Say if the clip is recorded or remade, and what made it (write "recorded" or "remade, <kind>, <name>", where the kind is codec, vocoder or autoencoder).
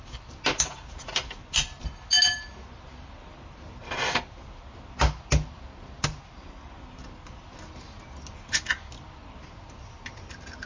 recorded